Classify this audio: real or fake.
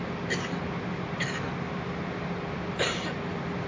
real